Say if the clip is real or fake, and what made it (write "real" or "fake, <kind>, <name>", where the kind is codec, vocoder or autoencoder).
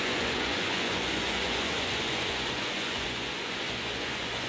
fake, vocoder, Vocos